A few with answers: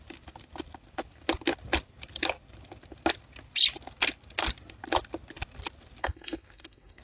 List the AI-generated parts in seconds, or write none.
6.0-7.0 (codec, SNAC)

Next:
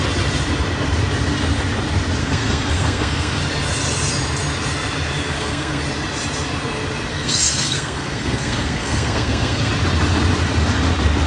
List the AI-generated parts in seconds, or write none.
2.2-3.4 (codec, SNAC); 5.2-5.8; 7.1-9.7

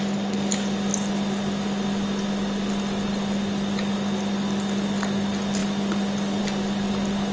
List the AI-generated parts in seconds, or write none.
none

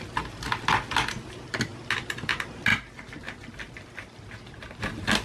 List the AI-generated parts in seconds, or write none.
none

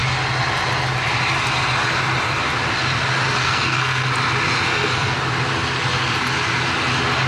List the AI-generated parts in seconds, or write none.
3.4-4.1 (codec, SNAC); 4.7-5.2

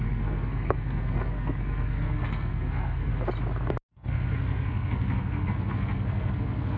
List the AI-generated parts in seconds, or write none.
0.0-3.1 (codec, SNAC); 3.9-6.8

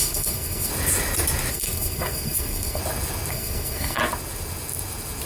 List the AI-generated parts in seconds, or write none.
0.0-0.7 (codec, SNAC); 1.5-2.8; 3.3-4.0